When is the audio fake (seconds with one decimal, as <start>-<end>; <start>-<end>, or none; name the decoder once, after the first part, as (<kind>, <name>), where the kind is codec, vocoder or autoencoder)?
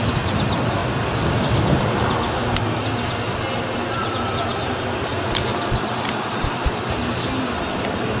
5.5-6.9 (vocoder, BigVGAN v2)